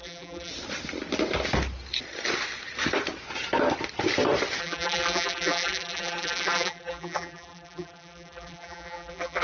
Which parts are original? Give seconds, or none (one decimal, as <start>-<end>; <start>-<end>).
0.5-4.6